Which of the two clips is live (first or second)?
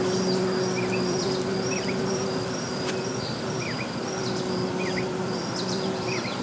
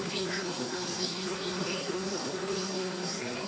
first